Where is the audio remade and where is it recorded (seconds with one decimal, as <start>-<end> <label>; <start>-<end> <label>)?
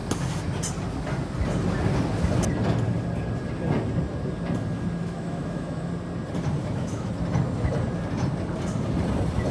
0.0-5.0 recorded; 5.0-5.9 remade; 5.9-6.6 recorded; 6.6-7.1 remade; 7.1-9.5 recorded